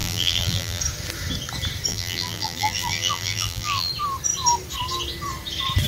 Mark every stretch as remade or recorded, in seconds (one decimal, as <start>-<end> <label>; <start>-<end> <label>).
0.0-0.8 remade; 0.8-1.9 recorded; 1.9-3.9 remade; 3.9-5.9 recorded